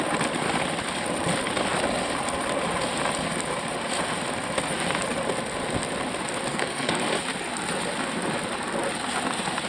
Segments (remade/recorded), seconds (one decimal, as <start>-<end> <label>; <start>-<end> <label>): 0.0-6.5 recorded; 6.5-7.0 remade; 7.0-9.7 recorded